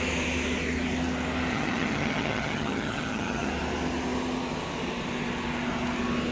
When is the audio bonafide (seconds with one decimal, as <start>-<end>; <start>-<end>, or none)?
0.0-1.5; 3.5-6.3